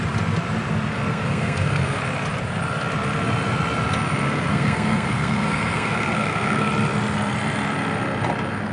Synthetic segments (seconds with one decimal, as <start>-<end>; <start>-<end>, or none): 1.1-2.0; 4.5-6.7

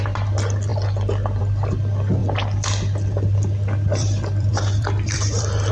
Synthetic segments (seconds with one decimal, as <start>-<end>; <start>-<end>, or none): 2.2-5.7

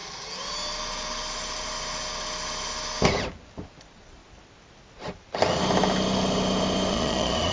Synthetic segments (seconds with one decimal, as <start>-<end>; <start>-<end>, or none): 3.8-4.2; 6.9-7.5

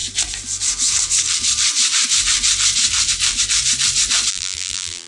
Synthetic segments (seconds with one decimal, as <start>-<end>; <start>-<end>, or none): 4.3-5.1

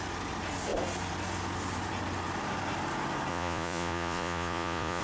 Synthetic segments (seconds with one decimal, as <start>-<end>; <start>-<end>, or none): 3.3-5.0

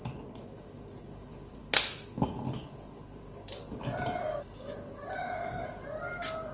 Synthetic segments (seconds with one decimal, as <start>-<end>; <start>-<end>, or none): none

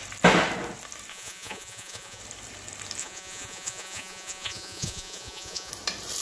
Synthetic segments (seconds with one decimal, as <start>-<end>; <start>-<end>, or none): 1.1-2.2; 3.0-5.7

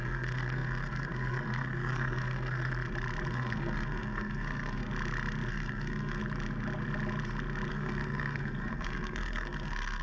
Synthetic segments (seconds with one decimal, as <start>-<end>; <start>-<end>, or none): 0.0-2.7; 3.3-4.8; 5.5-6.2; 7.7-10.0